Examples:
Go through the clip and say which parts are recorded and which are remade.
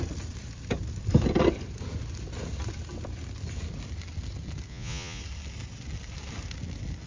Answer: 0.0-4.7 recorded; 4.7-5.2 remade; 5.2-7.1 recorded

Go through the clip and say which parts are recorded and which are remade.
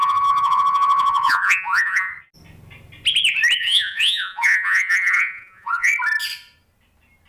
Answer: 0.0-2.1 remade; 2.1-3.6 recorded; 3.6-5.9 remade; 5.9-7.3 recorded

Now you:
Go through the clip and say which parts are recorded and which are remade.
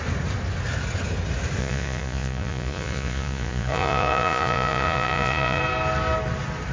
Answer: 0.0-1.6 recorded; 1.6-5.6 remade; 5.6-6.7 recorded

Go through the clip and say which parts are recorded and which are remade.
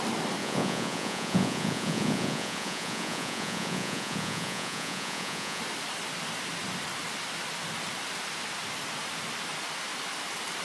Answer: 0.0-0.4 recorded; 0.4-5.6 remade; 5.6-10.6 recorded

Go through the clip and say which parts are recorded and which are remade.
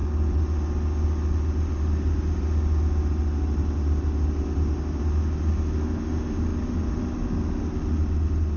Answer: 0.0-8.6 recorded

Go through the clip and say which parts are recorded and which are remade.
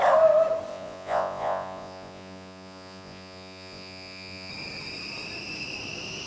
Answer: 0.0-0.7 recorded; 0.7-4.5 remade; 4.5-6.3 recorded